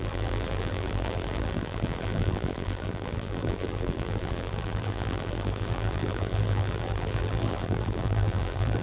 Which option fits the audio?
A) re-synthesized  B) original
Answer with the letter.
A